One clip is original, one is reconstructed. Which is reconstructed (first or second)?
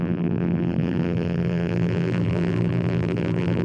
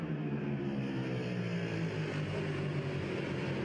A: first